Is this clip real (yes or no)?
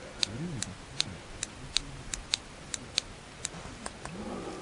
yes